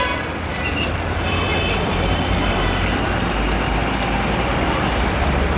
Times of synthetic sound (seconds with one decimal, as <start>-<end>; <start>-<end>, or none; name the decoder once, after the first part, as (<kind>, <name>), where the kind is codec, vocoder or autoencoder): 0.0-1.5 (vocoder, BigVGAN v2); 4.9-5.6